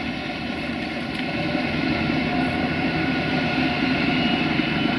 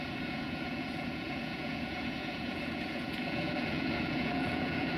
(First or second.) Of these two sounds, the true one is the first